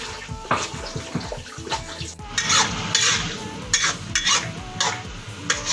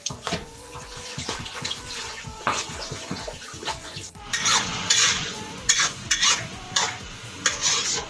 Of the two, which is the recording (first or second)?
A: first